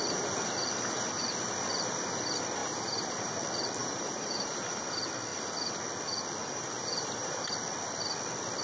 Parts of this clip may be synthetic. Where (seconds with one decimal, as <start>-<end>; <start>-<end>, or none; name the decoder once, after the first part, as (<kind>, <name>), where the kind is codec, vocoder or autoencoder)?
2.6-3.3 (vocoder, BigVGAN v2); 3.8-4.8; 6.4-7.5